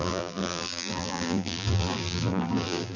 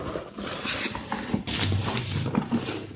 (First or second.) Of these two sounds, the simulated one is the first